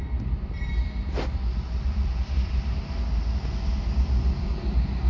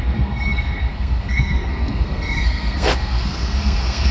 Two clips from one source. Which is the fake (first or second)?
second